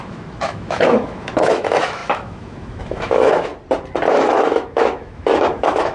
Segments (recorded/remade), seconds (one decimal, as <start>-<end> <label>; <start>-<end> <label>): 0.0-3.5 remade; 3.5-4.1 recorded; 4.1-5.9 remade